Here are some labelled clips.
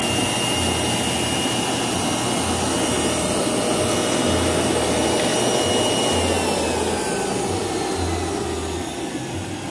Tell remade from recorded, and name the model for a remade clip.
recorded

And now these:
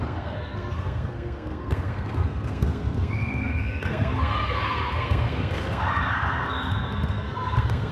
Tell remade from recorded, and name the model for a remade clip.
remade, codec, SNAC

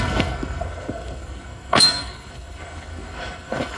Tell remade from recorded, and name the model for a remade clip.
remade, codec, SNAC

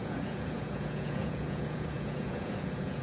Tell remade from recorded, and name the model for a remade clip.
remade, vocoder, Vocos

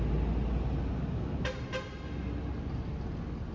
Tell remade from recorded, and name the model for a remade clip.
recorded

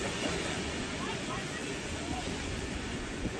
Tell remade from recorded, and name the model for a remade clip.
remade, vocoder, Vocos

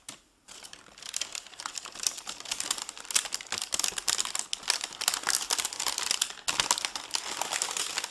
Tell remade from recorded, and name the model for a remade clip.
recorded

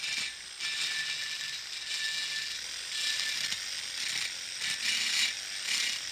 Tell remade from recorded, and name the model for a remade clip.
recorded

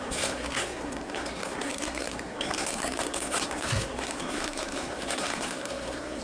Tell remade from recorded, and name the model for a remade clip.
remade, codec, SNAC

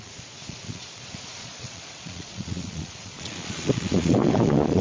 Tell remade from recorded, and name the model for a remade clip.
remade, vocoder, Vocos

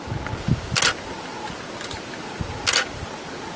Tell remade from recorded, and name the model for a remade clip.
recorded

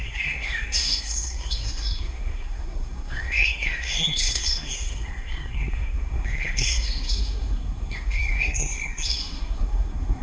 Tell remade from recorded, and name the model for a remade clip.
remade, codec, SNAC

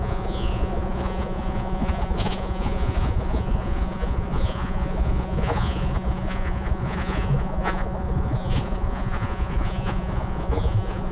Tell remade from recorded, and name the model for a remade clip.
remade, vocoder, Vocos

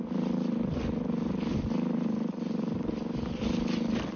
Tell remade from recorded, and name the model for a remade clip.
recorded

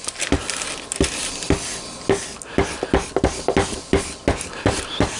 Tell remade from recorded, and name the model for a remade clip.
recorded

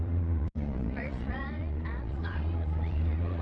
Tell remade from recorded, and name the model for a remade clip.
remade, vocoder, Vocos